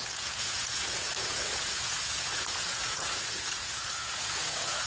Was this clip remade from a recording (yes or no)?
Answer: yes